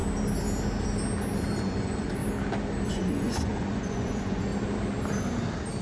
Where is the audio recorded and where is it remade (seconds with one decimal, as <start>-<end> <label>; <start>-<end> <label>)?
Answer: 0.0-1.6 recorded; 1.6-2.2 remade; 2.2-2.9 recorded; 2.9-4.5 remade; 4.5-5.8 recorded